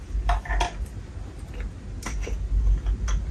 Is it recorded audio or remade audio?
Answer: recorded